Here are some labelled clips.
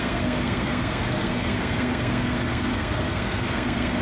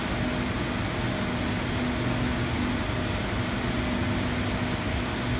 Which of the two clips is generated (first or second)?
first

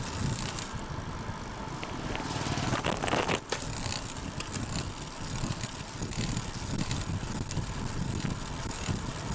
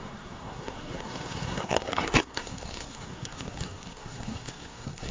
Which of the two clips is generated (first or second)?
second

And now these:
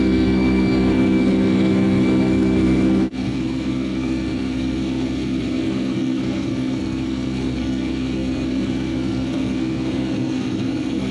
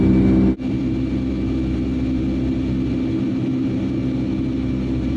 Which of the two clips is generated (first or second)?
first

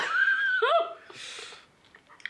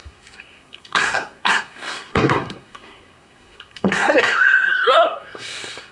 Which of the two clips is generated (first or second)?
second